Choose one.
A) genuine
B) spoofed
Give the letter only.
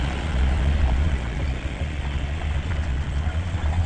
B